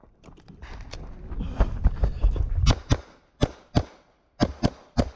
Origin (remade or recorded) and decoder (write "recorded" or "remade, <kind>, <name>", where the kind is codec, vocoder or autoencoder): recorded